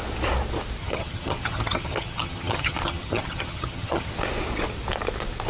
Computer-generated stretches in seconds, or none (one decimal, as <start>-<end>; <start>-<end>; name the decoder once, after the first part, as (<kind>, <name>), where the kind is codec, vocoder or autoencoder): 0.8-4.1 (vocoder, HiFi-GAN)